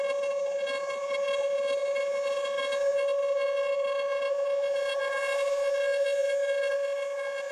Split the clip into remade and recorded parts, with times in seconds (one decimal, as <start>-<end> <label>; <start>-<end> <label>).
0.0-7.5 remade